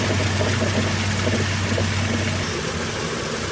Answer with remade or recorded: recorded